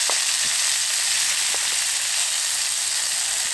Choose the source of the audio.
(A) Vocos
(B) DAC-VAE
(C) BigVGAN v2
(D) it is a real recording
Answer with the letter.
D